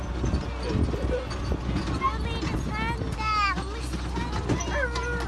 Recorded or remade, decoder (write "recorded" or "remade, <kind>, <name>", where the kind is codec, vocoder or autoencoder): recorded